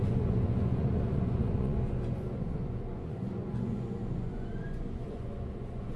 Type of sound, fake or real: fake